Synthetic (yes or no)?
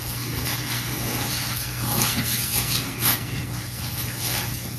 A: yes